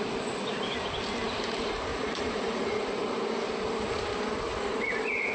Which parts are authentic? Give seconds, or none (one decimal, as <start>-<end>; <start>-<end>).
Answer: 0.0-1.9; 2.8-5.3